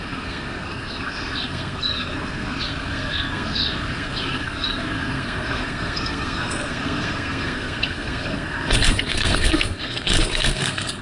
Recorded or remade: remade